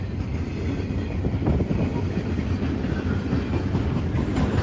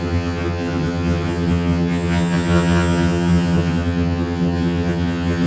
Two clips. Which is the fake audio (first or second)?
second